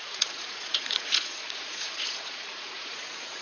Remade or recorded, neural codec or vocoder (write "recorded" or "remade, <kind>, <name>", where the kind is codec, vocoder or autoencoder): remade, vocoder, Vocos